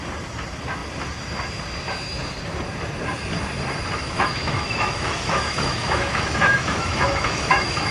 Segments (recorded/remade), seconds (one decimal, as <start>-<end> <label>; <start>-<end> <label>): 0.0-4.0 recorded; 4.0-7.9 remade